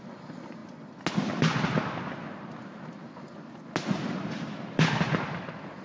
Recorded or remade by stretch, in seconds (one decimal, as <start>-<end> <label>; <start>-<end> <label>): 0.0-5.8 recorded